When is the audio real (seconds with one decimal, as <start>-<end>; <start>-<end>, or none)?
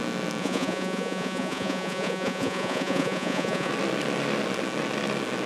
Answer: 0.0-0.4; 3.7-5.5